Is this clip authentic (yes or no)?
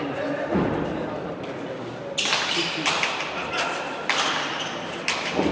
yes